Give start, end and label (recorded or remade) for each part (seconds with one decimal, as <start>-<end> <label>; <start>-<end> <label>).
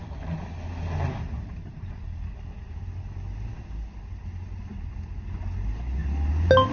0.0-6.7 recorded